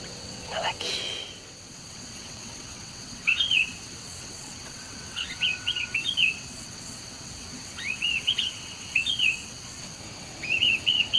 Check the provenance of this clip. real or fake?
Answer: fake